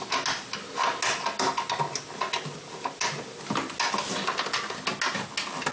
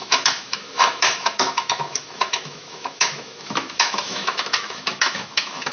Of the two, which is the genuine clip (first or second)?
first